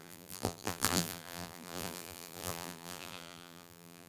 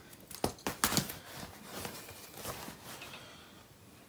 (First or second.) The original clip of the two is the second